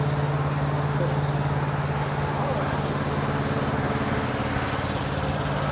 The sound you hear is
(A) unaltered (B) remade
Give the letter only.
A